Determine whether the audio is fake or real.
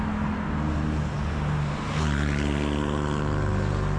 real